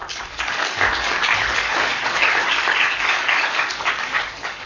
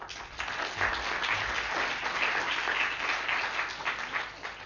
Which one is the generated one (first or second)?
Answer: first